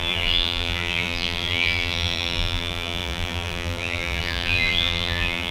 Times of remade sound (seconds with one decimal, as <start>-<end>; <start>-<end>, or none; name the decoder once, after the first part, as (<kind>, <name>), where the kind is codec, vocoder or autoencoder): 0.0-5.5 (vocoder, BigVGAN v2)